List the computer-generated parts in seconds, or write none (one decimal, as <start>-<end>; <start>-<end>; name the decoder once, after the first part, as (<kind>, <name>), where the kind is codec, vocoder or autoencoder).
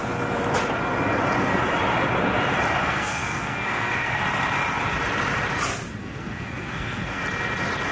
2.8-4.2 (codec, SNAC); 6.0-7.2